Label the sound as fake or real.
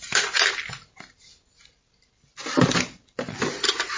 real